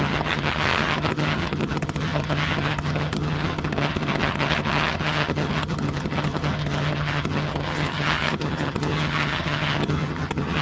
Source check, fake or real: fake